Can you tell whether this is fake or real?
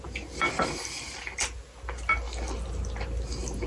real